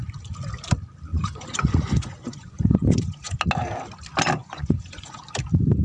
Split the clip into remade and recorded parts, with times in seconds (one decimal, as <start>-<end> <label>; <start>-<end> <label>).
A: 0.0-1.1 recorded; 1.1-3.4 remade; 3.4-4.4 recorded; 4.4-5.2 remade; 5.2-5.8 recorded

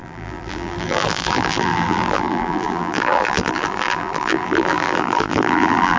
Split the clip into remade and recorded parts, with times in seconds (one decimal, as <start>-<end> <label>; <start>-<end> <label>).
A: 0.0-6.0 remade

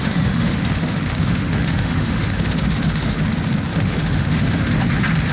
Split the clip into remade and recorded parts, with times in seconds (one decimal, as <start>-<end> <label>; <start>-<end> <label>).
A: 0.0-3.2 remade; 3.2-3.7 recorded; 3.7-4.8 remade; 4.8-5.3 recorded

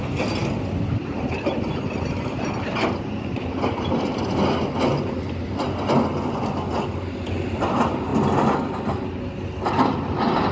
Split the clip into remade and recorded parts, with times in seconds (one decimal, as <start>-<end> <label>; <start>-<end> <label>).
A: 0.0-10.5 recorded

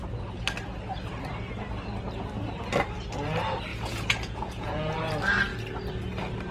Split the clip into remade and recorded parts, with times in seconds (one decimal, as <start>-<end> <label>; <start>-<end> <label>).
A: 0.0-3.7 recorded; 3.7-5.1 remade; 5.1-6.5 recorded

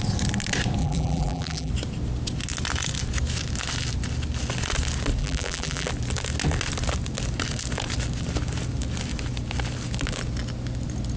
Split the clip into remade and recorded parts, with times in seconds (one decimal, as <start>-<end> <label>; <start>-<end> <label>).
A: 0.0-0.8 recorded; 0.8-1.7 remade; 1.7-5.2 recorded; 5.2-5.9 remade; 5.9-11.2 recorded